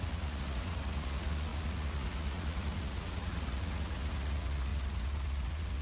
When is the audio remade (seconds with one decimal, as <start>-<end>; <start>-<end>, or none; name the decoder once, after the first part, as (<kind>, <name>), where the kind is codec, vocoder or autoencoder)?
0.0-5.8 (vocoder, Vocos)